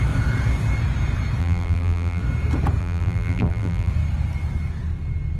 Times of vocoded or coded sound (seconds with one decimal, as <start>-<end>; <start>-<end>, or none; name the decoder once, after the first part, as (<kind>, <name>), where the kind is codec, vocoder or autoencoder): 1.4-2.2 (vocoder, BigVGAN v2); 2.8-3.9